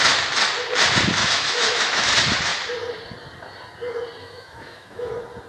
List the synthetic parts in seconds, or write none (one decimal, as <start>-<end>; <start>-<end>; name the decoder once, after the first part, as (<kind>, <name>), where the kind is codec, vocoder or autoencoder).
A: 1.2-2.1 (autoencoder, DAC-VAE); 4.2-5.1